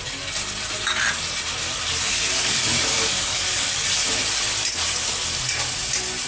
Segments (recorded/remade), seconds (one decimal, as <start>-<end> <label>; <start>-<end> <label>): 0.0-1.6 recorded; 1.6-3.9 remade; 3.9-6.3 recorded